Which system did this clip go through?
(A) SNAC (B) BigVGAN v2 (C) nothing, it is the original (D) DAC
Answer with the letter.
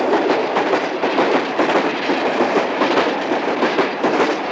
B